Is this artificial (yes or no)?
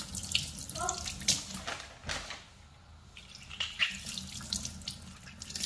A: no